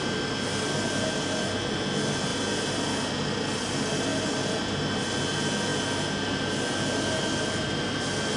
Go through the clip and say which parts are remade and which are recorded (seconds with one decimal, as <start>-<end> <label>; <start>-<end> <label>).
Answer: 0.0-8.4 recorded